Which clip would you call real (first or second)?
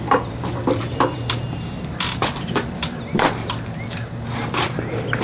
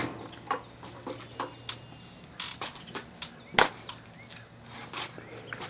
second